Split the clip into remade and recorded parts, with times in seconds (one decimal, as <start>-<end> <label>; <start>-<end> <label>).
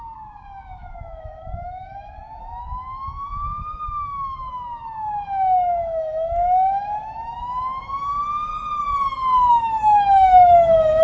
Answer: 0.0-8.5 remade; 8.5-9.5 recorded; 9.5-11.0 remade